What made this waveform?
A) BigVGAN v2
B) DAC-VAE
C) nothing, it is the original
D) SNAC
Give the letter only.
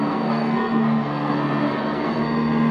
D